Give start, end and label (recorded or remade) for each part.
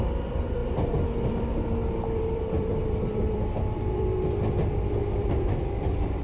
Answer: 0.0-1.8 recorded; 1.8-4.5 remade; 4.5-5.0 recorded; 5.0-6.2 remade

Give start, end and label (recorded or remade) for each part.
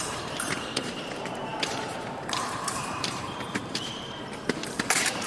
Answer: 0.0-5.3 remade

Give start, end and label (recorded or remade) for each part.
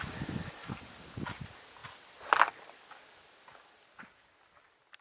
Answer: 0.0-5.0 recorded